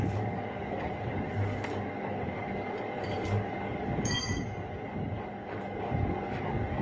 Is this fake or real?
fake